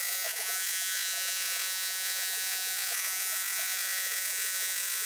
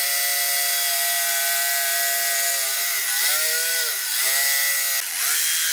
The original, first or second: second